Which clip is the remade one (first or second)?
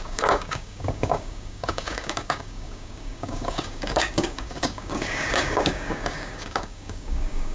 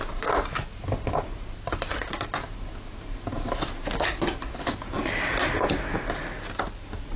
first